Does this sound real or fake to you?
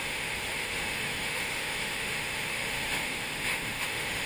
fake